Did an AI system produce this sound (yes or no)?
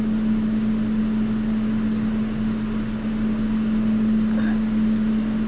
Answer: no